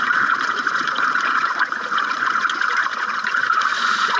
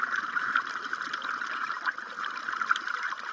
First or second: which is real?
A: second